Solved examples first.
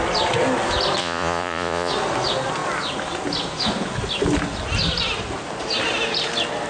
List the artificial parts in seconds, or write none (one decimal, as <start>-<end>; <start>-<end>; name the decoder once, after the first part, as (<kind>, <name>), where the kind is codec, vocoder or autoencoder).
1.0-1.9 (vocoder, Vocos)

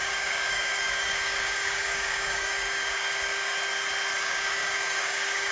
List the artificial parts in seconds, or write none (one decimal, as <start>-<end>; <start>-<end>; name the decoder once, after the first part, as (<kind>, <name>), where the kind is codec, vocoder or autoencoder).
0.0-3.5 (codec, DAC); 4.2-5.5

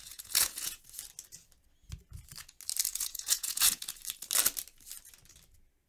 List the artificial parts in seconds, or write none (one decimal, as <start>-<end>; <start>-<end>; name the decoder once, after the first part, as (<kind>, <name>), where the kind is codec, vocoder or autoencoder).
0.0-0.8 (vocoder, Vocos); 2.9-4.0

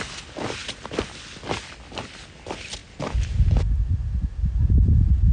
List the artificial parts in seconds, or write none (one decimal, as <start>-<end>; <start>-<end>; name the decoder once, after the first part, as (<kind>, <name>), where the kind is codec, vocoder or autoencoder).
none

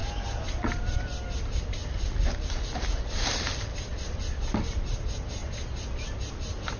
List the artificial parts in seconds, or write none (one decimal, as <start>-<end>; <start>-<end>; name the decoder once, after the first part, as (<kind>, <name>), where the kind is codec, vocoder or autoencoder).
none

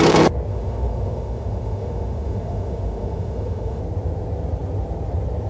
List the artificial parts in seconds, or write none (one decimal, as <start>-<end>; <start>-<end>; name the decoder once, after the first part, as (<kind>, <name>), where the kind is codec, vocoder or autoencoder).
0.5-3.8 (autoencoder, DAC-VAE)

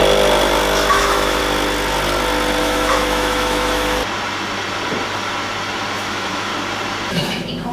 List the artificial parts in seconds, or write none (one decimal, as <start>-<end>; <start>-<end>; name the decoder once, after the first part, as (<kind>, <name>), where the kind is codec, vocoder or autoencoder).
0.9-1.4 (autoencoder, DAC-VAE); 2.6-4.0; 6.1-6.5; 7.1-7.7